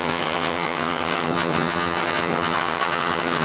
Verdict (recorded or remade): remade